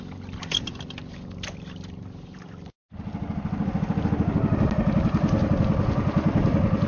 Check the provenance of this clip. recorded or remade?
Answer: recorded